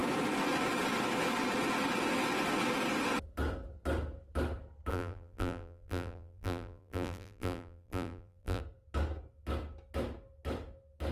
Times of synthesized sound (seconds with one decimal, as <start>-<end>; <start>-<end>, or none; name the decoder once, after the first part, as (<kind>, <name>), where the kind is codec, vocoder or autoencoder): 4.9-8.6 (vocoder, BigVGAN v2)